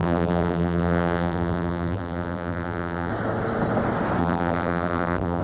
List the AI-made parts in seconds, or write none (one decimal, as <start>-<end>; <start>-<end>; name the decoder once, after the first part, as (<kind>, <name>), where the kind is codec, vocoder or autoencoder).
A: 0.0-3.1 (vocoder, BigVGAN v2); 4.2-5.4